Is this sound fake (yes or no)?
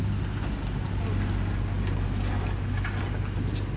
no